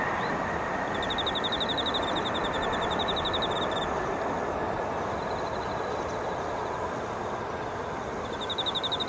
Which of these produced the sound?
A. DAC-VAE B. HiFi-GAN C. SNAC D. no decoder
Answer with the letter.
D